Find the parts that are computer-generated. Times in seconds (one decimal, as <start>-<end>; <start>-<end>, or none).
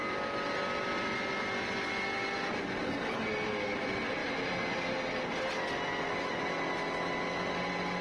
none